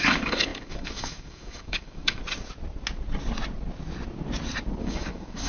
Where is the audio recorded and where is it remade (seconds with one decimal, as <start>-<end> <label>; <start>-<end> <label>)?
0.0-2.2 remade; 2.2-4.8 recorded; 4.8-5.5 remade